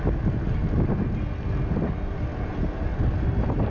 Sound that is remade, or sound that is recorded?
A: recorded